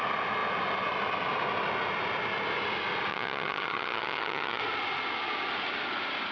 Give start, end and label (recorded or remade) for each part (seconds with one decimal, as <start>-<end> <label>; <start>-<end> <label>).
0.0-3.1 recorded; 3.1-4.6 remade; 4.6-6.3 recorded